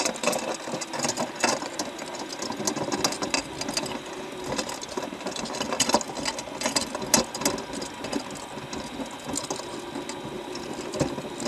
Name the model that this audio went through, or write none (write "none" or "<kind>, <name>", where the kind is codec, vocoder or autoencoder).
none